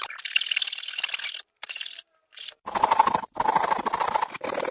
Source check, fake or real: fake